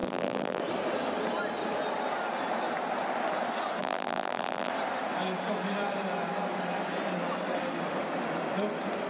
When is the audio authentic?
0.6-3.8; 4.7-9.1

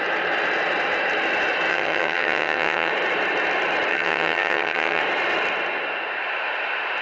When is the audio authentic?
0.0-1.7; 2.9-3.9; 5.0-7.0

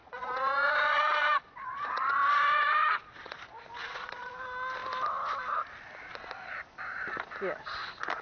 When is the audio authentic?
3.4-3.8; 4.3-8.2

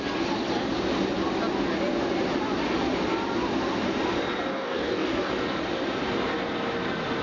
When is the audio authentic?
0.0-4.5; 5.3-7.2